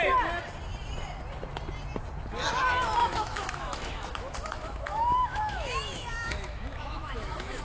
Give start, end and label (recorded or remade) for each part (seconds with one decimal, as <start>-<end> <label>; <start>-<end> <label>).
0.0-3.0 recorded; 3.0-7.6 remade